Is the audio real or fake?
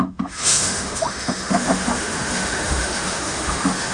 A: fake